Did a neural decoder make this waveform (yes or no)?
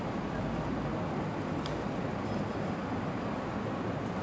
yes